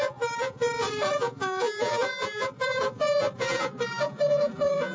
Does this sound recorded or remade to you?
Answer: remade